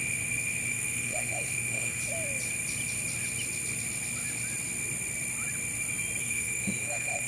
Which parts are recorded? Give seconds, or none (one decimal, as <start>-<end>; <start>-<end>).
0.0-0.7; 2.0-6.2